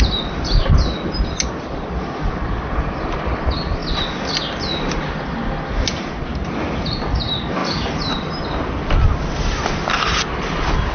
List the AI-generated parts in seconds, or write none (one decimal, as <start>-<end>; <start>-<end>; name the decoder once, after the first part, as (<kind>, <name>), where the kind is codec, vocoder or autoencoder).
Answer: 7.6-10.3 (vocoder, BigVGAN v2)